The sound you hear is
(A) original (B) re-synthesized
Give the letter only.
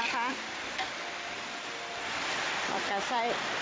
B